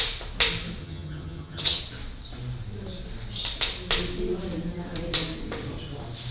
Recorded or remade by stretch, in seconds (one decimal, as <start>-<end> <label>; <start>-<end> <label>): 0.0-0.8 recorded; 0.8-1.8 remade; 1.8-6.3 recorded